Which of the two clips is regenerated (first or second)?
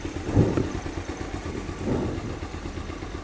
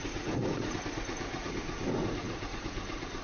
second